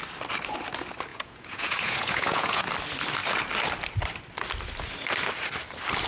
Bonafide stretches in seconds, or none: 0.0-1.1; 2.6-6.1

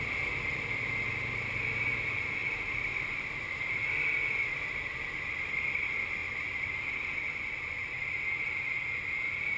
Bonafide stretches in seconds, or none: 0.0-9.6

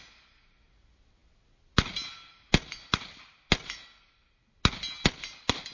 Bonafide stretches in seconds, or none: 0.0-5.7